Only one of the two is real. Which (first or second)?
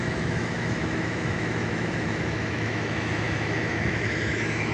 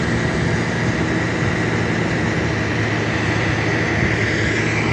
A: second